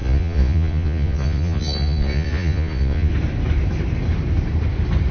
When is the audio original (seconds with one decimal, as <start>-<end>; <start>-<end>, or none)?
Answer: 3.1-5.1